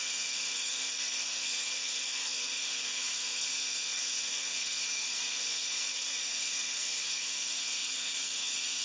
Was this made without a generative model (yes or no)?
no